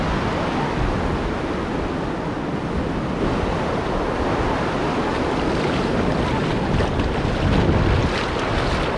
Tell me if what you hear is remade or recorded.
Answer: recorded